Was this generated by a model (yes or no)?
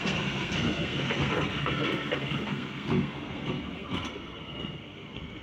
yes